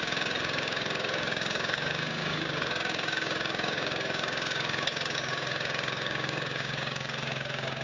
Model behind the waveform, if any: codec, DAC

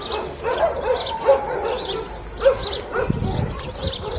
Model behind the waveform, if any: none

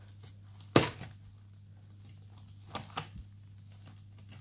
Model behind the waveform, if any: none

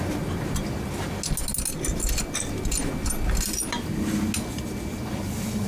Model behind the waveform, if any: none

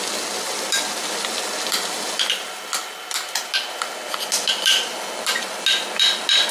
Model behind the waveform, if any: none